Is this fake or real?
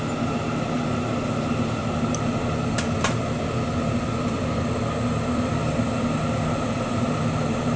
real